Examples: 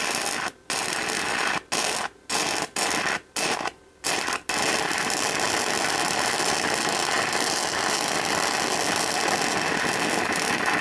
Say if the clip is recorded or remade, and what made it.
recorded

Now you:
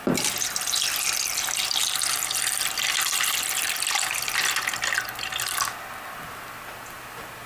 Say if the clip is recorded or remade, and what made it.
recorded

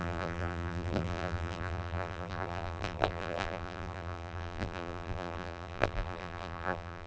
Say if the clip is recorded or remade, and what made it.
remade, vocoder, BigVGAN v2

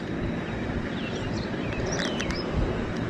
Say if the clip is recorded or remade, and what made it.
remade, vocoder, BigVGAN v2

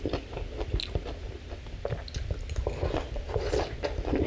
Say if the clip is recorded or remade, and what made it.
recorded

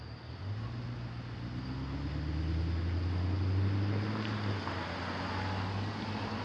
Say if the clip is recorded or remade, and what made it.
recorded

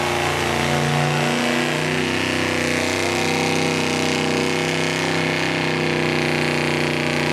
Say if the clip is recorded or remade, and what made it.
recorded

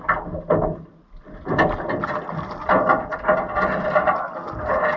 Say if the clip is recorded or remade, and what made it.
recorded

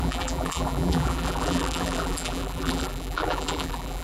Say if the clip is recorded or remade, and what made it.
remade, vocoder, BigVGAN v2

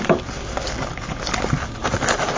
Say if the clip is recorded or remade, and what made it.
remade, vocoder, BigVGAN v2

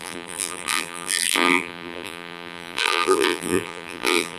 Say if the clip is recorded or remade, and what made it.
remade, vocoder, BigVGAN v2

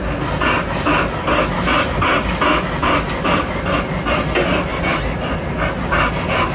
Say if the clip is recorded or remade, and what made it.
recorded